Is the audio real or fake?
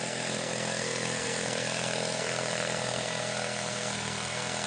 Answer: fake